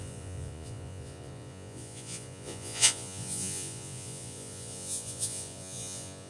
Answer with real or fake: fake